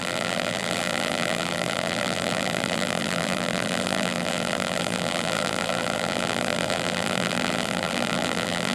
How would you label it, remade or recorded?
remade